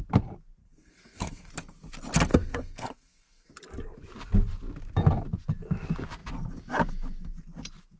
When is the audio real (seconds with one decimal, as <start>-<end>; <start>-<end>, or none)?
0.0-0.6; 1.5-2.3; 3.5-8.0